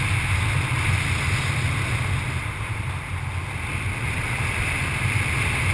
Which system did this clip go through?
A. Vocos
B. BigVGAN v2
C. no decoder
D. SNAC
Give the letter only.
C